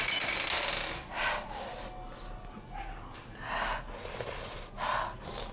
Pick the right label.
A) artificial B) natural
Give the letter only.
B